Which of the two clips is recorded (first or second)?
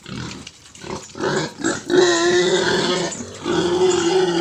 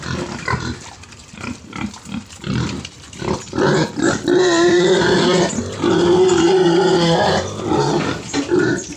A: first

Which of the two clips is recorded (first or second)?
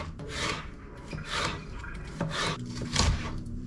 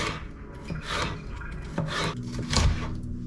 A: second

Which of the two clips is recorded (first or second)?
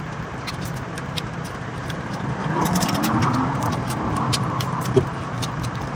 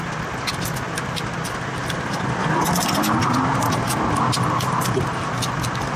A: second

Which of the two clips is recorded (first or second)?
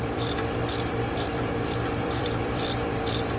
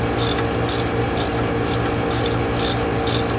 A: second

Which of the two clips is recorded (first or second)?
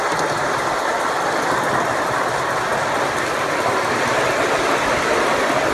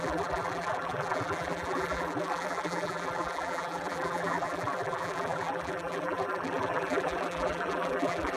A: first